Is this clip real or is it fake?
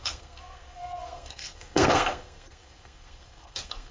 fake